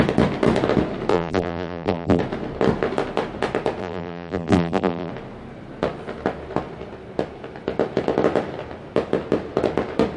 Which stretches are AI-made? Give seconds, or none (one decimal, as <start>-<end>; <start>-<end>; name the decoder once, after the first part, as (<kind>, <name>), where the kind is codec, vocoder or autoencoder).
1.1-2.2 (vocoder, BigVGAN v2); 3.8-5.1